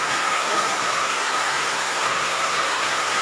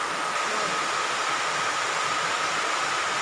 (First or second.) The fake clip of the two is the first